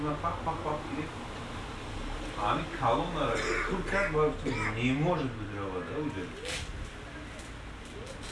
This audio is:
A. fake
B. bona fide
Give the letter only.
B